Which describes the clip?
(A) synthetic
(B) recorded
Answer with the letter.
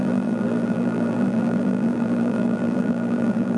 A